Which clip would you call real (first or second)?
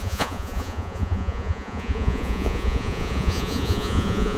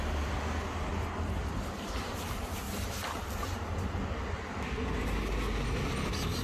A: second